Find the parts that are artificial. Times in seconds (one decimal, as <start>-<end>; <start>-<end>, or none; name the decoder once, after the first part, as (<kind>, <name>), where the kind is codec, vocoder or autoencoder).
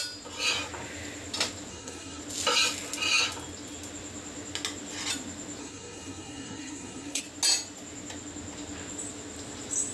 1.7-2.2 (codec, SNAC); 5.6-7.2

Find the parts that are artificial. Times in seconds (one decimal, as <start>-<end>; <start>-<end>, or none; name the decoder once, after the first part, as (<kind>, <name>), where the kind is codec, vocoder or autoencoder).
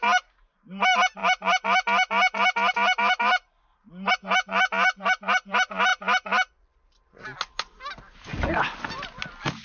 none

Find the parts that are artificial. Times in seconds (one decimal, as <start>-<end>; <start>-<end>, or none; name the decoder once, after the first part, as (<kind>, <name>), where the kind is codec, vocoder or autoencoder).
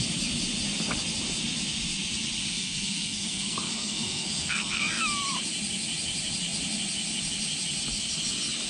2.4-5.0 (codec, SNAC)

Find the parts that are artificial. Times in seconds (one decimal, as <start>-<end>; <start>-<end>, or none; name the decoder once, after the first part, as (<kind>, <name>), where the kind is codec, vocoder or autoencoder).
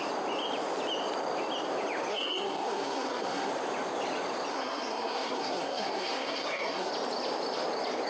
2.1-3.5 (codec, SNAC); 4.5-6.9